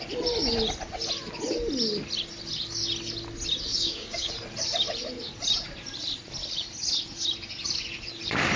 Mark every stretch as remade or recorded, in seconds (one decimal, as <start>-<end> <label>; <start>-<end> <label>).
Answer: 0.0-3.7 recorded; 3.7-4.3 remade; 4.3-8.6 recorded